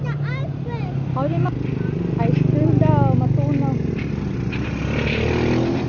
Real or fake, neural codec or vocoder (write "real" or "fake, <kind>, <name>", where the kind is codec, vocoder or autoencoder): real